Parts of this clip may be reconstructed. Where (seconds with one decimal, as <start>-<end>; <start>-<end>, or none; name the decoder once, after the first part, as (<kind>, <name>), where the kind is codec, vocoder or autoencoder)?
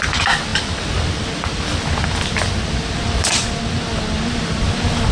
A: none